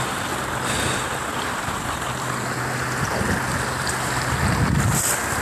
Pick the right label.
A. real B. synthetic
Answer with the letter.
A